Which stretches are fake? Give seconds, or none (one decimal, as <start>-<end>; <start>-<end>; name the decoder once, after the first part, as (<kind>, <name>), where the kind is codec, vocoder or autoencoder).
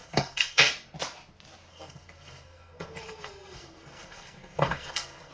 0.0-0.7 (codec, SNAC); 1.7-5.3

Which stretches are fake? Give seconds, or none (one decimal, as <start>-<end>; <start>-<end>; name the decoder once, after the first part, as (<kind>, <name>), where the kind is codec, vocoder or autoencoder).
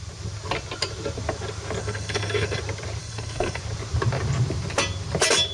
1.8-2.6 (codec, SNAC); 3.0-3.6